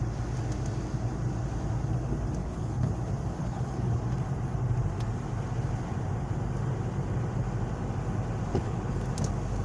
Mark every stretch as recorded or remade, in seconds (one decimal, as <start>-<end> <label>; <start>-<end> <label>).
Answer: 0.0-2.4 recorded; 2.4-2.9 remade; 2.9-3.4 recorded; 3.4-4.0 remade; 4.0-8.5 recorded; 8.5-9.0 remade; 9.0-9.6 recorded